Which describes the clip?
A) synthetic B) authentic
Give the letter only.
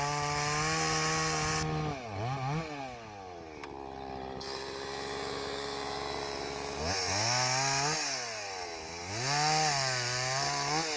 B